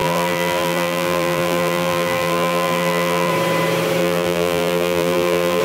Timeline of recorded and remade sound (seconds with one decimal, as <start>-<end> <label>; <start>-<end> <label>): 0.0-3.3 remade; 3.3-4.0 recorded; 4.0-5.6 remade